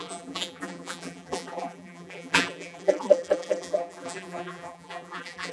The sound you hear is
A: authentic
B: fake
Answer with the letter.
B